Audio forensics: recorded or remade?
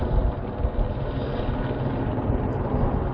recorded